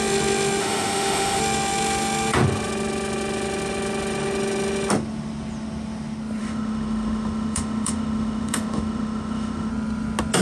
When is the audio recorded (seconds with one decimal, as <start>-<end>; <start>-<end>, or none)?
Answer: 0.0-0.6; 1.4-6.4; 9.7-10.4